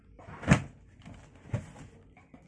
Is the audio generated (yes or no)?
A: no